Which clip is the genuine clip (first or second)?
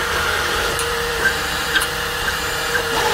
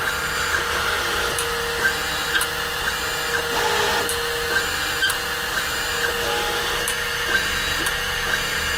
second